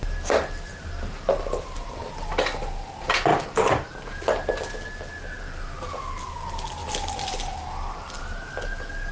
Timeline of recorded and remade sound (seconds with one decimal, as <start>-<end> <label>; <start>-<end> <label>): 0.0-9.1 recorded